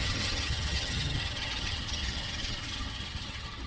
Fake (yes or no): yes